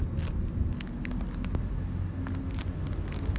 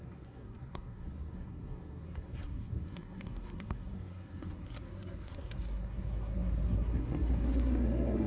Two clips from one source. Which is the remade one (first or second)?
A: second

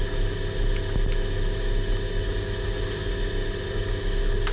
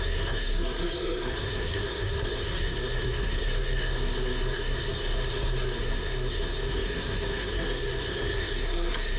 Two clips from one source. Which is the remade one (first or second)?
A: second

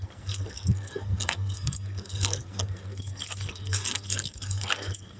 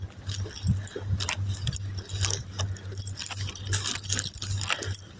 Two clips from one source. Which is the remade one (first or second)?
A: first